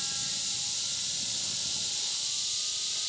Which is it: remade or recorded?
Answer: recorded